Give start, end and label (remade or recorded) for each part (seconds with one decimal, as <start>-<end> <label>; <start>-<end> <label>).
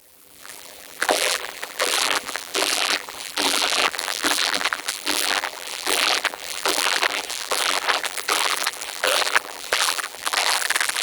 0.0-11.0 remade